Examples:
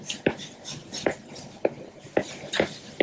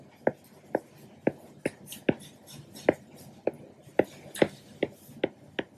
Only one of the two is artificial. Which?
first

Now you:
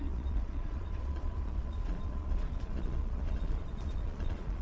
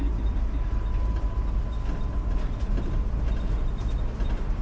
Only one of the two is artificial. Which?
first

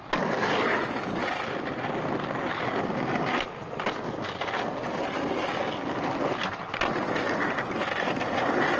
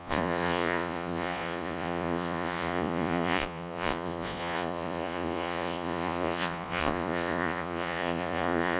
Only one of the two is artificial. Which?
second